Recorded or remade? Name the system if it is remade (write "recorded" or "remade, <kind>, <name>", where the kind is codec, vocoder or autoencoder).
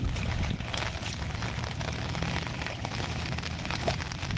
remade, vocoder, BigVGAN v2